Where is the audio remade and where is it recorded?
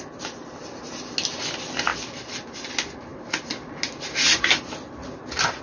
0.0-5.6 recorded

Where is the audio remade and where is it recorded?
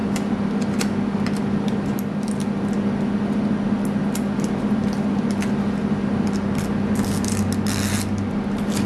0.0-8.9 recorded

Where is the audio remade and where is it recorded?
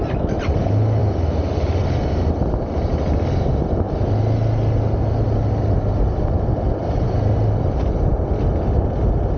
0.0-9.4 recorded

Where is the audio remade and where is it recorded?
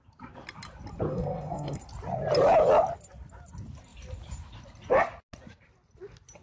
0.0-1.1 recorded; 1.1-1.8 remade; 1.8-6.4 recorded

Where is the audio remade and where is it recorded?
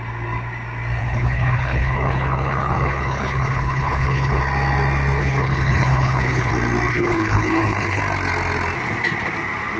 0.0-1.0 recorded; 1.0-4.4 remade; 4.4-5.2 recorded; 5.2-6.5 remade; 6.5-6.9 recorded; 6.9-8.0 remade; 8.0-9.8 recorded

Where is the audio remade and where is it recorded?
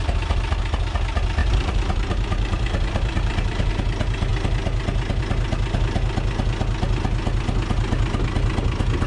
0.0-1.4 recorded; 1.4-3.7 remade; 3.7-9.1 recorded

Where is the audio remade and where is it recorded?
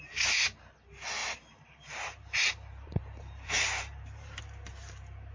0.0-1.2 recorded; 1.2-4.4 remade; 4.4-5.3 recorded